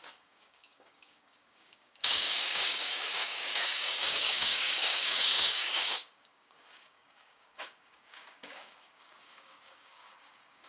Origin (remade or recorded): remade